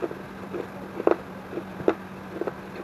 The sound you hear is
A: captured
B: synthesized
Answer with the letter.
A